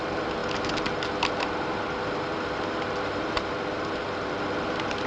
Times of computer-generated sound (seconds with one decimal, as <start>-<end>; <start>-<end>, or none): none